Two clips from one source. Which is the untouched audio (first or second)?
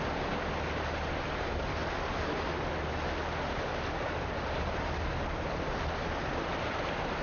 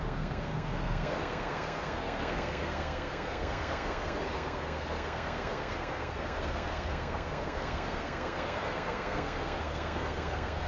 first